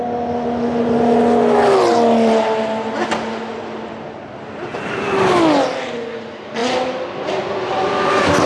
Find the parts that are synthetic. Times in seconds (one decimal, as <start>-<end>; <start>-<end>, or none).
none